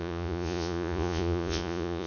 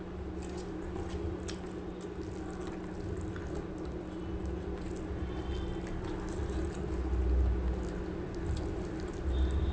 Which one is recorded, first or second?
second